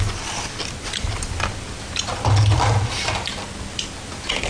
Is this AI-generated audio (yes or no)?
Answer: no